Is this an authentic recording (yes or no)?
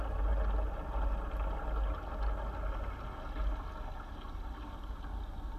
yes